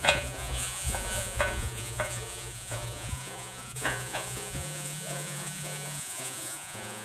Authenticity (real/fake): fake